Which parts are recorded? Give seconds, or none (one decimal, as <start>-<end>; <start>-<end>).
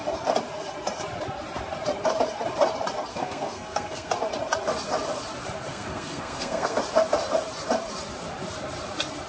0.0-3.1; 4.1-5.7; 6.8-9.3